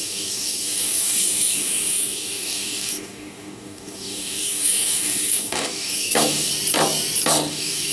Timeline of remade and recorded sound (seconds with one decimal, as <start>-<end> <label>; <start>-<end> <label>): 0.0-6.5 remade; 6.5-7.5 recorded; 7.5-7.9 remade